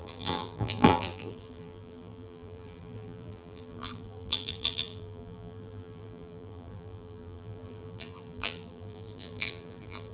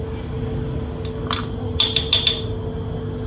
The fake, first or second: first